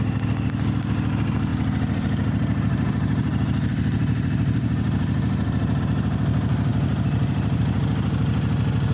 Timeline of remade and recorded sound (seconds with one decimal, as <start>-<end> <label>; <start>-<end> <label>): 0.0-1.5 recorded; 1.5-5.8 remade; 5.8-6.7 recorded; 6.7-7.8 remade; 7.8-8.9 recorded